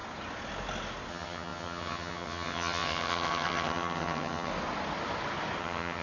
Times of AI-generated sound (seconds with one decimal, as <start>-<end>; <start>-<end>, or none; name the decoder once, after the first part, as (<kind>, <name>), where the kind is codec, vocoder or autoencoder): 1.1-4.5 (vocoder, HiFi-GAN); 5.6-6.0